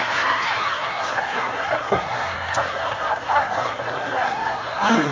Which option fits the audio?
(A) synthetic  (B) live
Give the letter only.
A